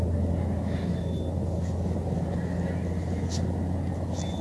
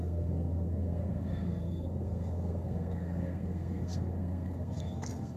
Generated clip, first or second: second